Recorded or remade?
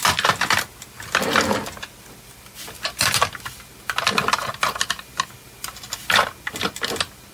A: recorded